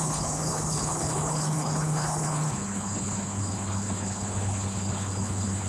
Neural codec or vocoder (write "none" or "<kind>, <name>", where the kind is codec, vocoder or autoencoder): codec, HILCodec